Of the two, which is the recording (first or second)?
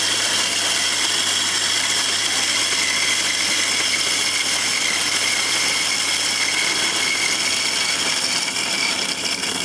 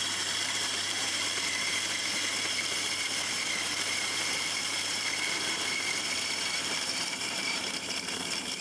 first